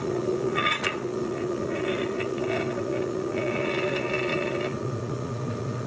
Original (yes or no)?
no